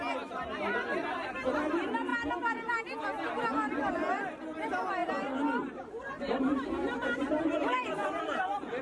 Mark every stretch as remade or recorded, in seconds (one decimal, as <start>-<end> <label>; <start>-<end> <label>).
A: 0.0-8.0 recorded; 8.0-8.8 remade